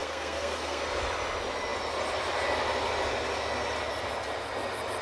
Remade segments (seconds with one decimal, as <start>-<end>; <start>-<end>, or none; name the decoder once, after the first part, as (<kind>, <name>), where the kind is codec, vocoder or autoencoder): 0.0-0.8 (codec, SNAC)